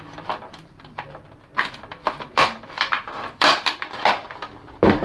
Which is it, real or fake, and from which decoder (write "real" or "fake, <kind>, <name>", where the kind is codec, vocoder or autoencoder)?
fake, vocoder, BigVGAN v2